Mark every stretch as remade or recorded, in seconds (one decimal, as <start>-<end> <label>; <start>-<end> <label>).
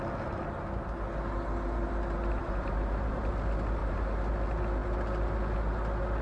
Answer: 0.0-2.4 recorded; 2.4-3.3 remade; 3.3-3.8 recorded; 3.8-4.3 remade; 4.3-6.2 recorded